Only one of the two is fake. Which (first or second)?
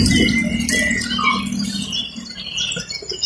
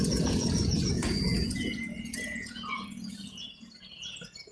second